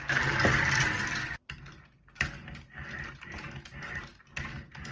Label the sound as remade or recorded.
recorded